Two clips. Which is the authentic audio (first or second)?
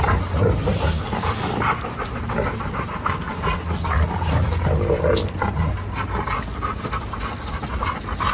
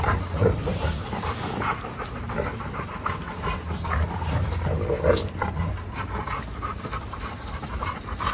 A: first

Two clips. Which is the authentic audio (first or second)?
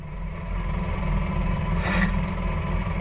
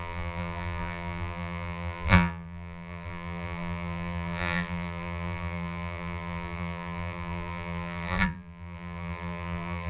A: first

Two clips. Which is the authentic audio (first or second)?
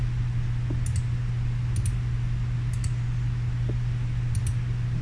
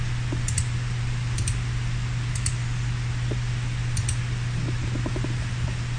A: first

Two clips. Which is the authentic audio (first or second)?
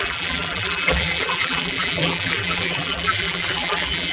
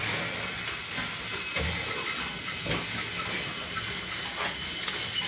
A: second